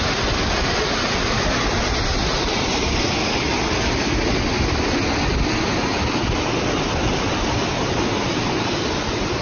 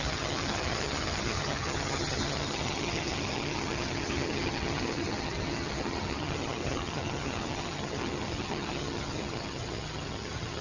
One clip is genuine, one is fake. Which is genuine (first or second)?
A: first